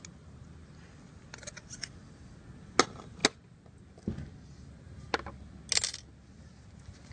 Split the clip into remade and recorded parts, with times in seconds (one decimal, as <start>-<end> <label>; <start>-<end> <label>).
0.0-7.1 recorded